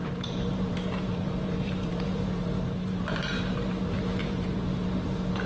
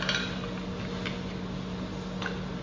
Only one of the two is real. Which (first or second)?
second